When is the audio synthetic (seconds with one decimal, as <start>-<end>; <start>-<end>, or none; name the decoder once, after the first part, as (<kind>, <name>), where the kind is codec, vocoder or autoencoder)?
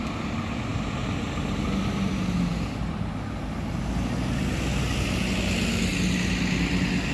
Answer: none